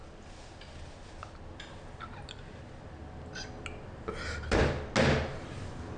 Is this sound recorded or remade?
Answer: recorded